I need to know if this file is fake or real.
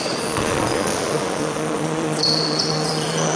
fake